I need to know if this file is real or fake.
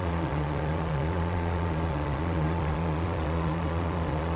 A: fake